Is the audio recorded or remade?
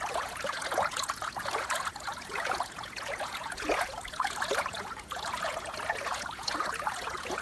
remade